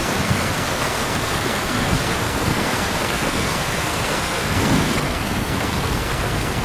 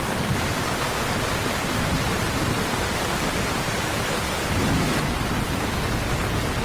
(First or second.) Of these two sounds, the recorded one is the second